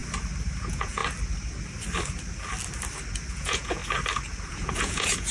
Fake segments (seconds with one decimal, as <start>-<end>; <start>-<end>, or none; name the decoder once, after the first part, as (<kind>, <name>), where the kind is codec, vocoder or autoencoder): 0.6-1.0 (vocoder, Vocos); 3.3-3.8; 4.5-5.3